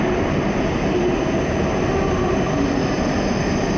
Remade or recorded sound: recorded